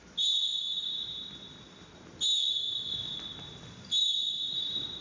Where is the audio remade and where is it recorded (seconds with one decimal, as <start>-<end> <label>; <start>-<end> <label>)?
0.0-5.0 recorded